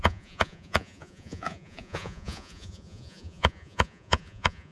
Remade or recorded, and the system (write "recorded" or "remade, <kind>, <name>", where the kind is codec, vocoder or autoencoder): remade, vocoder, Vocos